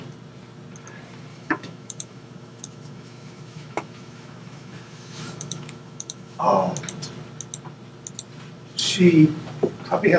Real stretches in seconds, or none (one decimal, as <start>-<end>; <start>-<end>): 0.0-1.3; 6.4-10.2